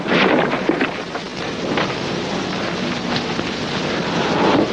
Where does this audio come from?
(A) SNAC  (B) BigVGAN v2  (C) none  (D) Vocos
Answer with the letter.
C